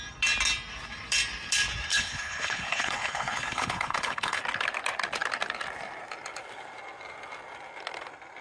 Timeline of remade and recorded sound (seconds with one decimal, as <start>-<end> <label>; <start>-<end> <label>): 0.0-1.9 recorded; 1.9-4.4 remade; 4.4-8.4 recorded